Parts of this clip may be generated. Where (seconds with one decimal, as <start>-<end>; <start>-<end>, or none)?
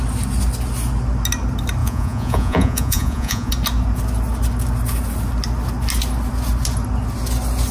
1.8-3.5